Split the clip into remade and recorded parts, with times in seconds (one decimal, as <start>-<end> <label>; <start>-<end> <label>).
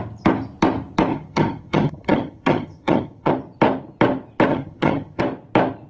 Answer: 0.0-1.1 recorded; 1.1-3.3 remade; 3.3-4.5 recorded; 4.5-5.2 remade; 5.2-5.9 recorded